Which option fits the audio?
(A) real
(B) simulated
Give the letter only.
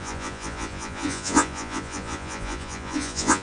B